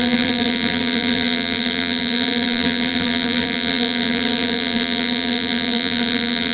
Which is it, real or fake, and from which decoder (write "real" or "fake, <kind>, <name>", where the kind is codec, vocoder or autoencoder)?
fake, vocoder, BigVGAN v2